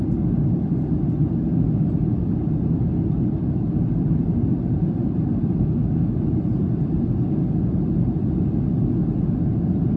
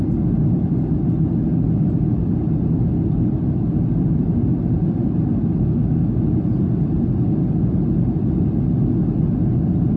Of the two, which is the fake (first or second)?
first